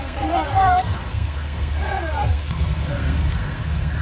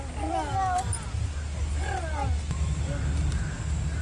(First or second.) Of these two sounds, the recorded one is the second